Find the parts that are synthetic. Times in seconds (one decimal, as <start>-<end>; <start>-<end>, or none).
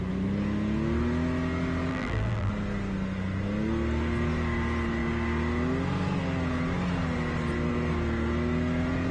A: 1.9-2.5